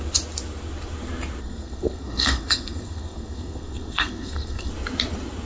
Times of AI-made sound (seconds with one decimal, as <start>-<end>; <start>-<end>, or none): 1.4-4.7